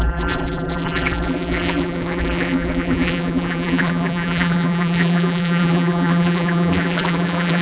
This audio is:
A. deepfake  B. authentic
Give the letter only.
A